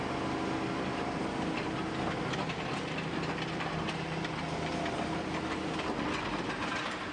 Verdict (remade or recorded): recorded